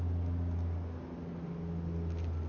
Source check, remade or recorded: recorded